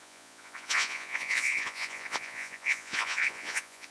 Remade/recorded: remade